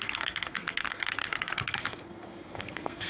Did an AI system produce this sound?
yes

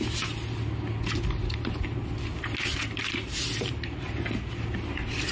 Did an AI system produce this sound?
no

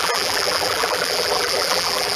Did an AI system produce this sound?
yes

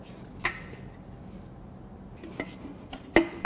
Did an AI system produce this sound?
no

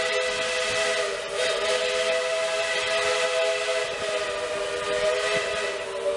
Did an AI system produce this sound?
no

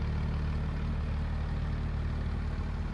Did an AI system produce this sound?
no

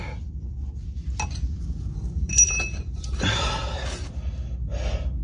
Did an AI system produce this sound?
no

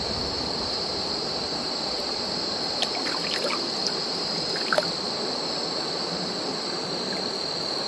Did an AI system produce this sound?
no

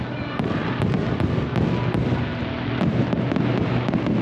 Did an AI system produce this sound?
no